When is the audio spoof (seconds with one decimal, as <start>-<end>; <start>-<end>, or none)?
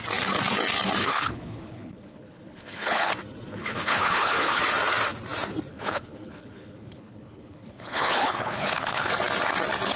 1.0-3.1; 3.5-4.6; 5.7-9.1